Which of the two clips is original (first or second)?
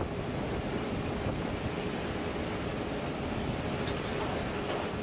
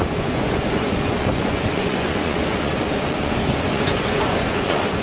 first